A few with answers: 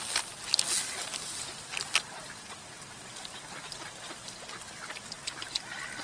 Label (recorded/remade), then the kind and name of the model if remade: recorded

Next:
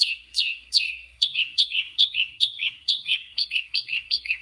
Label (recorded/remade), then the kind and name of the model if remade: remade, codec, SNAC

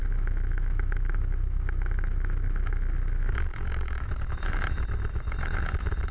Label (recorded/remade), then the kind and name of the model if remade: remade, autoencoder, DAC-VAE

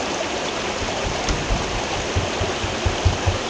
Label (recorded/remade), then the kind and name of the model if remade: recorded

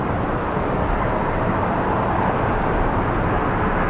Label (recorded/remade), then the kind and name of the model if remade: recorded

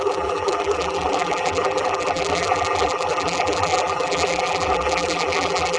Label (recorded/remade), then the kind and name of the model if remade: remade, vocoder, BigVGAN v2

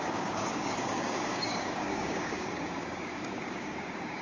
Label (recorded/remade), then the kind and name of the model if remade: remade, codec, DAC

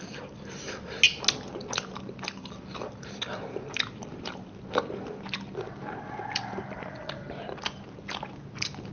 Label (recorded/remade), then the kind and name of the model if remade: recorded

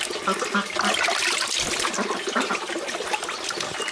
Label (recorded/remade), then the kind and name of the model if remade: recorded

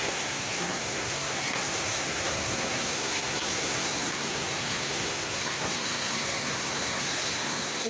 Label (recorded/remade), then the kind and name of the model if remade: remade, codec, SNAC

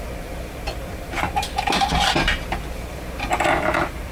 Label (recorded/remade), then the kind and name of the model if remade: remade, vocoder, BigVGAN v2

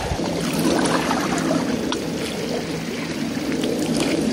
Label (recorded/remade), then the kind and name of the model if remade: recorded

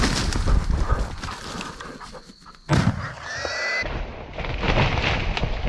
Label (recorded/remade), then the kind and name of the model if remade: recorded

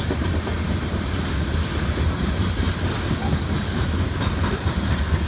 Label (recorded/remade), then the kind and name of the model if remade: recorded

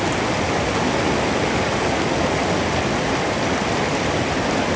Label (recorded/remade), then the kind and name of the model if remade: recorded